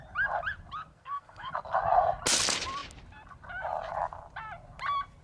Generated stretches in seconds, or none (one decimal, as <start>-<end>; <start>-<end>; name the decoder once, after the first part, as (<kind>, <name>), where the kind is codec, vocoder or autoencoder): 0.9-1.5 (codec, SNAC)